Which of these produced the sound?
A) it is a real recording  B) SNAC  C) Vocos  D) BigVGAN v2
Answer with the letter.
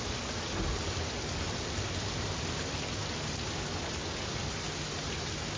A